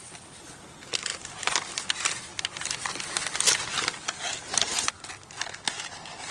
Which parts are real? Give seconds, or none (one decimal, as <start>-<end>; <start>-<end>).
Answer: 0.0-6.3